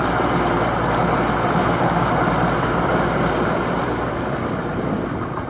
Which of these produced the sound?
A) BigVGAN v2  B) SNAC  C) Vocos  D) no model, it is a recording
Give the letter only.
D